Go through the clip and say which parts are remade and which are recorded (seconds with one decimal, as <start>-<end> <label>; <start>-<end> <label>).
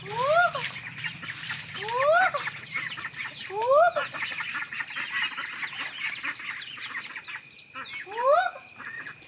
0.0-9.3 recorded